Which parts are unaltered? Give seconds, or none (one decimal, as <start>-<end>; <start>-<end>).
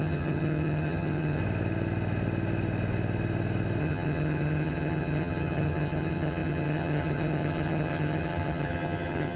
1.4-3.8